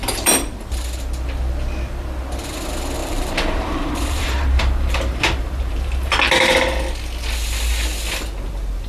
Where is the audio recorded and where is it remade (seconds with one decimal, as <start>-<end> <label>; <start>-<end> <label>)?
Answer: 0.0-0.6 remade; 0.6-3.0 recorded; 3.0-6.1 remade; 6.1-8.9 recorded